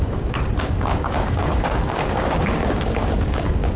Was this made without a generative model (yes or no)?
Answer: no